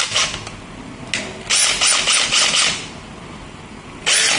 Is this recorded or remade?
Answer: recorded